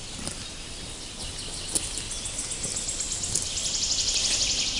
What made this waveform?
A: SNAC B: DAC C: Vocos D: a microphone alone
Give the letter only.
D